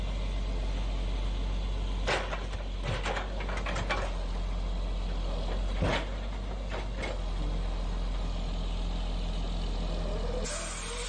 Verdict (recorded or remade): recorded